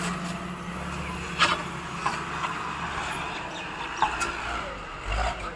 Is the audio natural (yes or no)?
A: yes